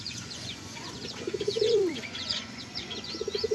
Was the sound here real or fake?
fake